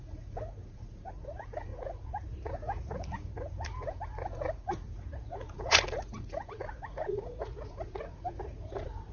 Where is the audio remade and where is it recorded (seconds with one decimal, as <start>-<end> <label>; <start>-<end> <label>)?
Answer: 0.0-9.1 remade